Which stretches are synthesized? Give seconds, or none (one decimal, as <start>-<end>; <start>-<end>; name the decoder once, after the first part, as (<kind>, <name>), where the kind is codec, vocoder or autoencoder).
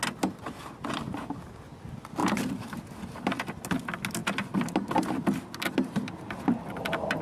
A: 2.2-3.0 (vocoder, BigVGAN v2)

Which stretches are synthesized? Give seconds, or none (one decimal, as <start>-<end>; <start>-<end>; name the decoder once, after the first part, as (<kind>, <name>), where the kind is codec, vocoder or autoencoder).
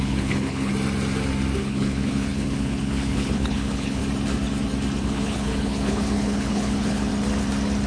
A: 0.0-0.7 (codec, HILCodec); 1.6-4.0; 5.0-7.1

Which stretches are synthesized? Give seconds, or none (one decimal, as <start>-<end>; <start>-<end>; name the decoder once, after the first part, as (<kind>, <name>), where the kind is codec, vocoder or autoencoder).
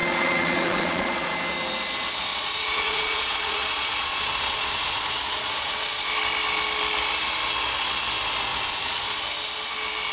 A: 0.0-1.3 (vocoder, Vocos); 2.3-6.1; 8.5-9.2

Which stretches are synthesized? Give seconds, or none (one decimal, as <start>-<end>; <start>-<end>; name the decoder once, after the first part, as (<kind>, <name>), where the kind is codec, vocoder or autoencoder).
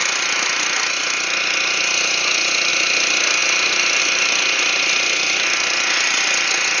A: none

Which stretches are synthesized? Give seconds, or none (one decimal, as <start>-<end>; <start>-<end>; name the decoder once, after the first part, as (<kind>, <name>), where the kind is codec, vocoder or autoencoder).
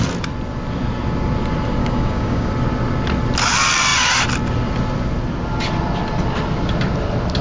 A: 1.8-2.5 (codec, DAC)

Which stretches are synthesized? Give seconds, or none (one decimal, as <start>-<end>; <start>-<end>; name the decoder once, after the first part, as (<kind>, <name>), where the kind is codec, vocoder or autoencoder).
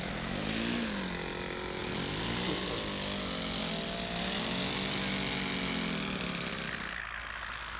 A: none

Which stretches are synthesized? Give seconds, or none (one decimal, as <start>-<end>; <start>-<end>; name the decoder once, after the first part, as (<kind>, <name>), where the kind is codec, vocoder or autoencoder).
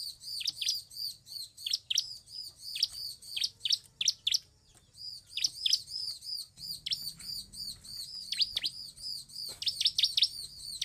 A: none